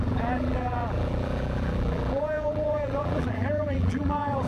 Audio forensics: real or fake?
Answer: fake